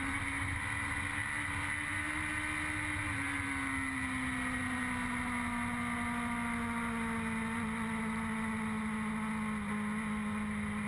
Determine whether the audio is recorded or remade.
recorded